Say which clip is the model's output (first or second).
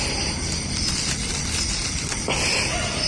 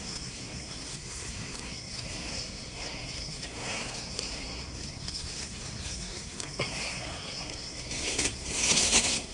second